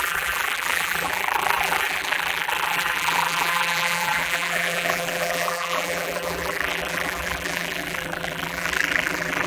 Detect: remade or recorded remade